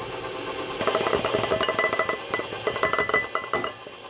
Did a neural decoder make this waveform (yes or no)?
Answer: no